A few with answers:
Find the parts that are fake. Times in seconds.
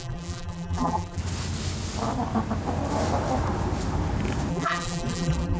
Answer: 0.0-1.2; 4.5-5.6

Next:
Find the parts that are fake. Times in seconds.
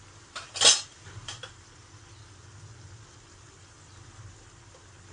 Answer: 0.7-1.6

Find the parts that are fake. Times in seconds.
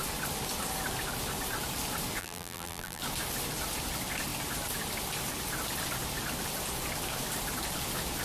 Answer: 2.2-3.0